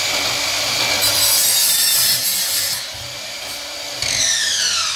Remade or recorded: recorded